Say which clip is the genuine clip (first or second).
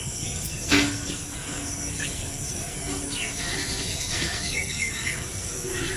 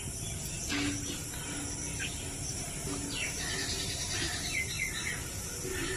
second